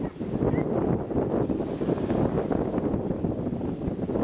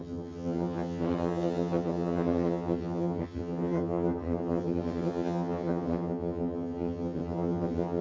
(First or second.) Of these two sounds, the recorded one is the first